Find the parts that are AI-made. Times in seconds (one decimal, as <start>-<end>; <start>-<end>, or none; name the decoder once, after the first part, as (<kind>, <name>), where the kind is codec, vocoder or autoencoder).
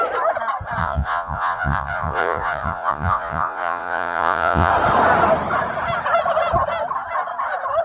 0.8-4.7 (vocoder, Vocos)